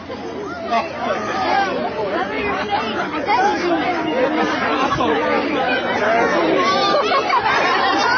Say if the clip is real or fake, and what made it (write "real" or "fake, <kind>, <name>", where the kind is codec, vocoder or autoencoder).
real